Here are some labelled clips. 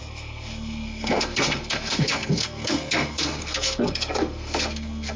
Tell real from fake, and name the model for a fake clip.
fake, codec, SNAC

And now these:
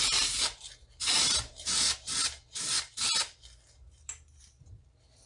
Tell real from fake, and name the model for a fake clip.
fake, vocoder, BigVGAN v2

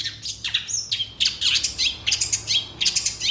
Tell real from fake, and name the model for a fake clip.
real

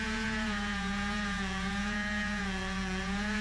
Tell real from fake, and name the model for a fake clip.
fake, vocoder, Vocos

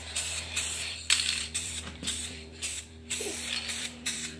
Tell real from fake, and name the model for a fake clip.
fake, vocoder, BigVGAN v2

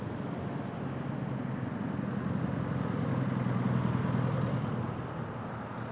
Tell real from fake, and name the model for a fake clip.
real